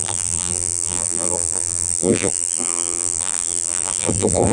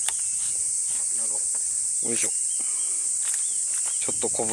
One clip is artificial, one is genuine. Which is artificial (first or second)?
first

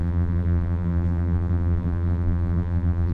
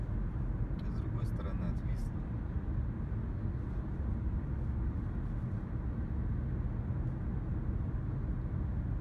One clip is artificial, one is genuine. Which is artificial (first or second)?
first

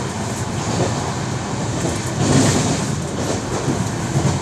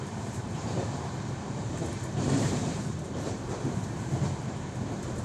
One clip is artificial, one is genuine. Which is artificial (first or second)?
second